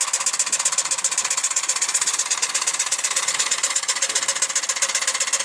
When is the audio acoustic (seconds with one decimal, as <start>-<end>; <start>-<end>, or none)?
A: 0.0-1.4; 4.2-5.4